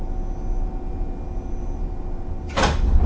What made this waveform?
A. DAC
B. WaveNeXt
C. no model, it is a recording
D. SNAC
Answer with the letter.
C